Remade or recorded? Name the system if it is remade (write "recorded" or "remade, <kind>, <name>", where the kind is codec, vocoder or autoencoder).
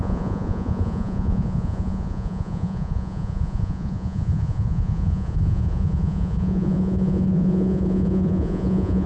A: remade, vocoder, Vocos